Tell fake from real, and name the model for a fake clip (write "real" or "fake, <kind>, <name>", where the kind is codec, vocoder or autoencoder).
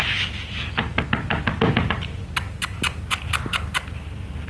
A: real